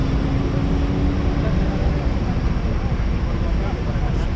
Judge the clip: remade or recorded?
recorded